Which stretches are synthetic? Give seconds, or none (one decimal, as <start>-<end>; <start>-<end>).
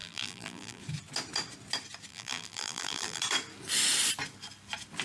0.0-0.8; 2.1-3.2